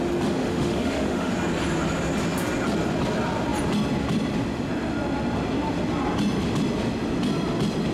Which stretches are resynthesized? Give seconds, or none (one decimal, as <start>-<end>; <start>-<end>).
0.4-1.3